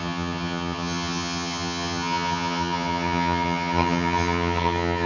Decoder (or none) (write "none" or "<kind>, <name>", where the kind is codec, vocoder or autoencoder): vocoder, HiFi-GAN